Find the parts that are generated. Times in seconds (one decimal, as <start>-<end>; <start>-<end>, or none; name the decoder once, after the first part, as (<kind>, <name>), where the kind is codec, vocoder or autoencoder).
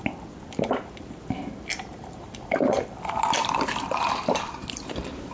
1.7-5.3 (vocoder, BigVGAN v2)